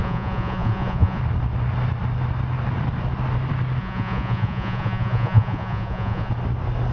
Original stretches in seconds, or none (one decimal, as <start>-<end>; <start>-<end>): 1.2-3.8; 6.3-6.9